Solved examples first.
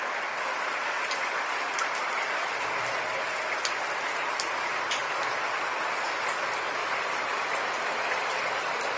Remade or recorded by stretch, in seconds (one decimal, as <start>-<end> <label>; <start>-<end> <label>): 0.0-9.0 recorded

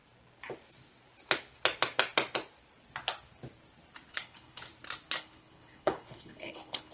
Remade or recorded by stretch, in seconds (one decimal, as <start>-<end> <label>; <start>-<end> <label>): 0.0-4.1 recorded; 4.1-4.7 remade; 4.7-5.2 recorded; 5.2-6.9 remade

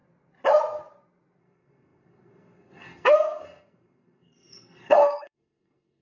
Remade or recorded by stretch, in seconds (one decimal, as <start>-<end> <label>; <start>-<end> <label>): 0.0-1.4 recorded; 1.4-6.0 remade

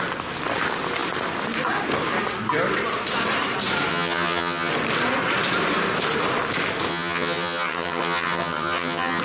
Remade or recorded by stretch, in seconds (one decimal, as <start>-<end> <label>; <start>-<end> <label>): 0.0-3.9 recorded; 3.9-4.7 remade; 4.7-6.9 recorded; 6.9-9.2 remade

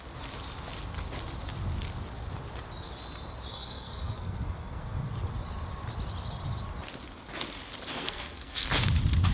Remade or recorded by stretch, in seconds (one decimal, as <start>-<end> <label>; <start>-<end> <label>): 0.0-3.5 recorded; 3.5-5.1 remade; 5.1-7.9 recorded; 7.9-8.7 remade; 8.7-9.3 recorded

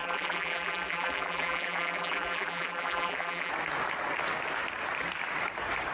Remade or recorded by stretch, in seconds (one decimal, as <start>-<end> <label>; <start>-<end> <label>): 0.0-3.5 remade; 3.5-5.9 recorded

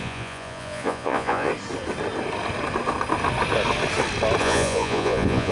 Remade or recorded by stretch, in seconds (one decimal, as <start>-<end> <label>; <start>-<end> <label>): 0.0-1.5 remade; 1.5-4.4 recorded; 4.4-5.5 remade

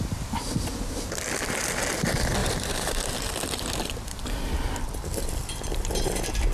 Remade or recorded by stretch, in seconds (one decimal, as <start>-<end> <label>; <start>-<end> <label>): 0.0-2.4 recorded; 2.4-3.3 remade; 3.3-6.5 recorded